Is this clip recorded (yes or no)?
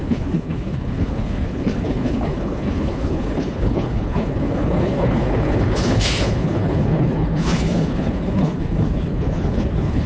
no